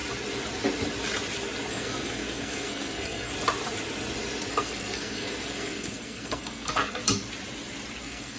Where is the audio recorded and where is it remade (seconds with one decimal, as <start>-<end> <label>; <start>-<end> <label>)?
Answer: 0.0-1.7 recorded; 1.7-3.3 remade; 3.3-4.5 recorded; 4.5-7.0 remade; 7.0-8.0 recorded; 8.0-8.4 remade